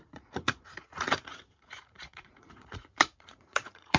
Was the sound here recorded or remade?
remade